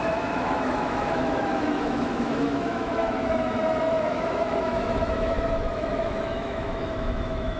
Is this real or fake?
fake